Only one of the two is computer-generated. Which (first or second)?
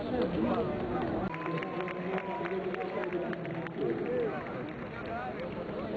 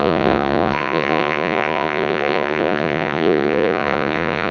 second